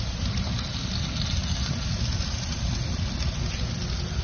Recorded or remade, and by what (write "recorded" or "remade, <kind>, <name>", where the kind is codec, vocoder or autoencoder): recorded